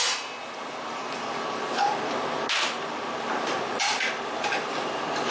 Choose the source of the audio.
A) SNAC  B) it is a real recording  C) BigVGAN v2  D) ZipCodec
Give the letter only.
B